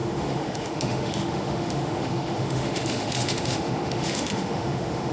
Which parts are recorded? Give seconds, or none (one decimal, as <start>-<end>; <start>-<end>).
none